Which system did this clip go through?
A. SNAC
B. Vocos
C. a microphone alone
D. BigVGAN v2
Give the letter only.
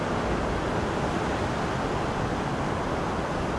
C